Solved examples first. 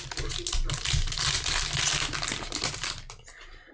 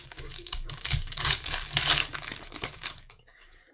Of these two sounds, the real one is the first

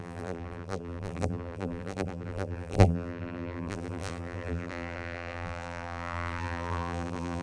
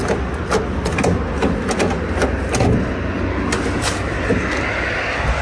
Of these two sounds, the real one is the second